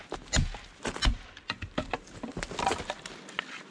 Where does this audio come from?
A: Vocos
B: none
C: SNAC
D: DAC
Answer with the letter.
B